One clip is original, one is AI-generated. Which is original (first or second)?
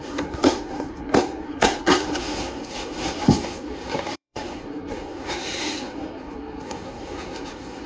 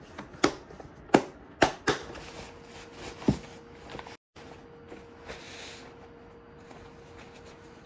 second